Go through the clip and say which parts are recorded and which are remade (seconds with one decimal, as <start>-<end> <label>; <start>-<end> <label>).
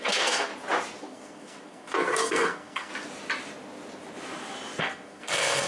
0.0-0.5 remade; 0.5-1.0 recorded; 1.0-2.9 remade; 2.9-4.8 recorded; 4.8-5.7 remade